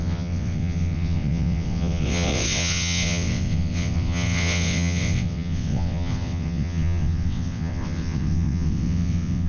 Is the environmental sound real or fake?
fake